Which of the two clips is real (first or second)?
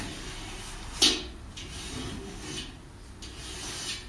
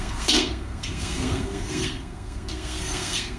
first